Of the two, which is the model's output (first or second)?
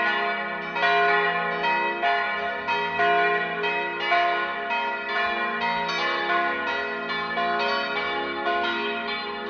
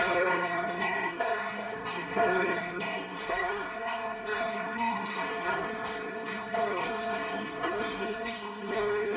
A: second